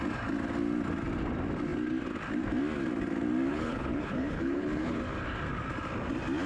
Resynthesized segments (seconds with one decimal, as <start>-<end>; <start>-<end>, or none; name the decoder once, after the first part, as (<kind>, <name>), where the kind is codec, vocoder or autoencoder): 3.5-5.0 (codec, HILCodec)